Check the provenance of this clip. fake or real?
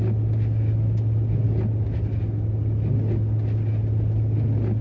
real